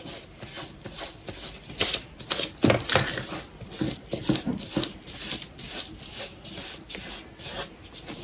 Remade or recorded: recorded